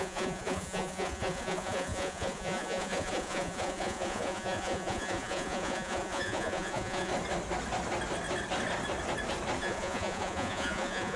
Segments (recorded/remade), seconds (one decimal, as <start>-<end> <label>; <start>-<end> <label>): 0.0-7.1 remade; 7.1-9.6 recorded; 9.6-11.2 remade